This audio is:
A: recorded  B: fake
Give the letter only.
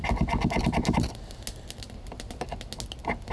A